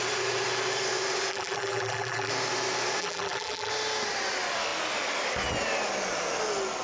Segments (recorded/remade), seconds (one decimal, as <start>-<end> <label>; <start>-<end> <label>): 0.0-1.3 recorded; 1.3-2.3 remade; 2.3-3.0 recorded; 3.0-3.7 remade; 3.7-6.8 recorded

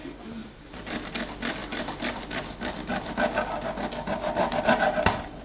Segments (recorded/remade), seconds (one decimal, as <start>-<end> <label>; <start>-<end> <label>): 0.0-0.4 recorded; 0.4-1.1 remade; 1.1-5.4 recorded